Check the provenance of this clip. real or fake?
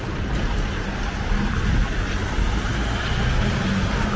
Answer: real